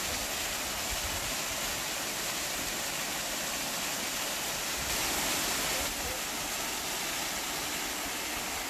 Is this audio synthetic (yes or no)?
no